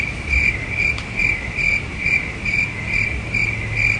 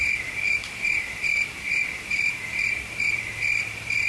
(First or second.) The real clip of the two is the first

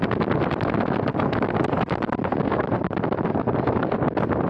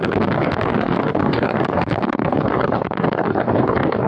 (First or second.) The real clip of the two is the first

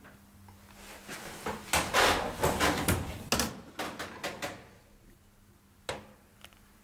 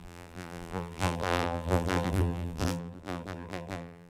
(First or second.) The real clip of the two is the first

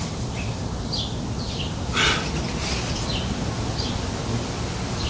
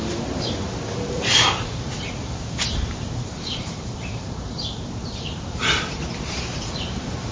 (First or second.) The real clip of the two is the first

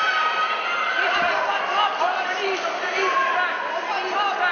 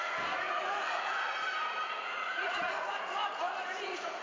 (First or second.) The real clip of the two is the first